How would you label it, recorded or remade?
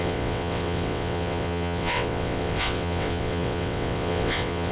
remade